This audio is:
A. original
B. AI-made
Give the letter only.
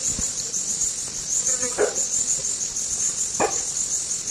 A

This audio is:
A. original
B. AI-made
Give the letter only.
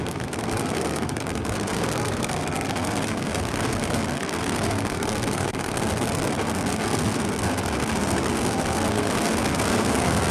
B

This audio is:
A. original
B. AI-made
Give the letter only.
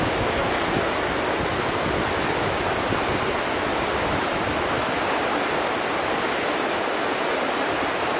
A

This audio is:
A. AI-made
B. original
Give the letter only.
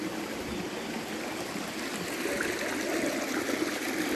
B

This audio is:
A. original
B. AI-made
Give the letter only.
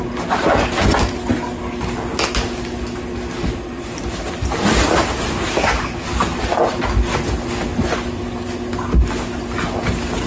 A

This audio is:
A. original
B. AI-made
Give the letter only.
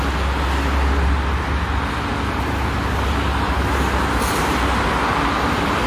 A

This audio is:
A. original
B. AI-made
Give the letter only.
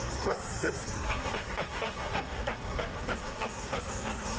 B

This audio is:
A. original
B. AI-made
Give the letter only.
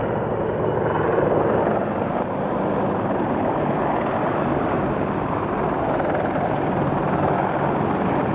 A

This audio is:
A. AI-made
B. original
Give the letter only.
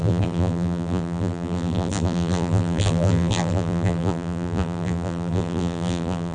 A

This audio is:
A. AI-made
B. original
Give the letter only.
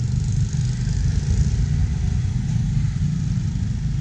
B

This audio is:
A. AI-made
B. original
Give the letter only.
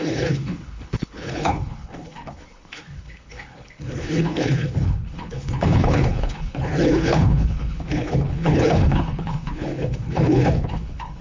A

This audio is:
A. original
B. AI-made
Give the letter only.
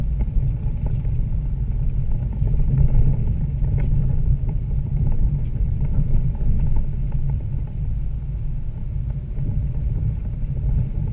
A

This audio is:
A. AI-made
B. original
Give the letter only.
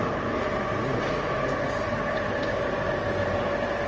B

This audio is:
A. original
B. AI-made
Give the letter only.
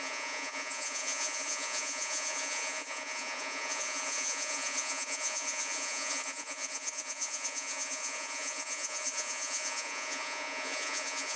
B